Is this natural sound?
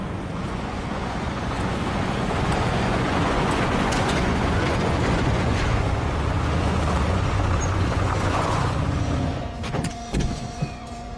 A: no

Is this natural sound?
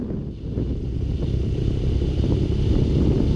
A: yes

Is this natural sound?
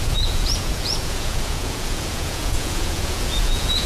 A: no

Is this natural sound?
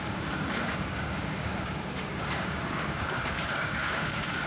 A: no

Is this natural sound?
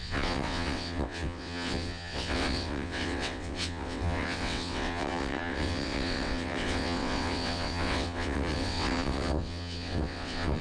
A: no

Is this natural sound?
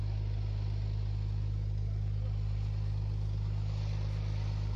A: yes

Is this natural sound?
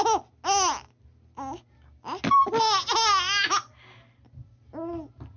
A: yes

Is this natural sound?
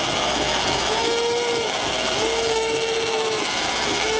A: no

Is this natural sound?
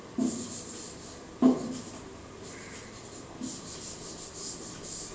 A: yes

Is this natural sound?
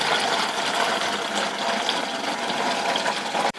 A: yes